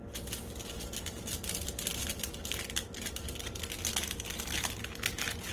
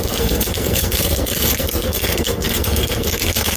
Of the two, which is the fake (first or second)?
second